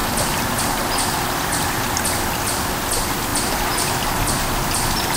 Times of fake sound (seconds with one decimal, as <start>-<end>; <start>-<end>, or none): 0.0-2.0; 3.3-5.2